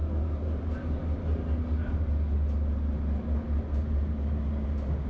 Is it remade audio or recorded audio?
recorded